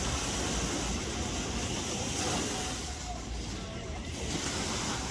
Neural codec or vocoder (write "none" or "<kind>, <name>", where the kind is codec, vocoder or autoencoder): none